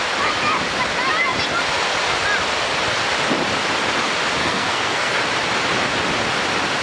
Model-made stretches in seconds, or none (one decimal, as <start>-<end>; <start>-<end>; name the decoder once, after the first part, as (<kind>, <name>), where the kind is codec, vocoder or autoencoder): 4.4-5.2 (codec, SNAC)

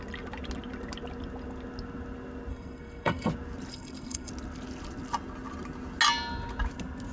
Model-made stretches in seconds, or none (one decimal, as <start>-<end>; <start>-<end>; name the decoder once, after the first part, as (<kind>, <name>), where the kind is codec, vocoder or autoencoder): 2.5-3.3 (codec, SNAC); 3.7-4.3

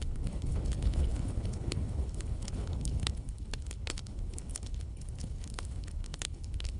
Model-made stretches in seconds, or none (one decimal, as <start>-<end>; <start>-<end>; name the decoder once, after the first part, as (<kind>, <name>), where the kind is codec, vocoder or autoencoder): 0.0-6.8 (codec, HILCodec)

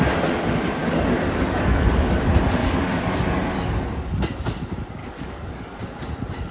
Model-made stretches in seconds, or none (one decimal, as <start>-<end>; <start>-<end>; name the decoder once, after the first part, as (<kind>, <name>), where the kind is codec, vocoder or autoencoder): 0.8-2.2 (codec, DAC); 2.6-4.2; 5.0-5.8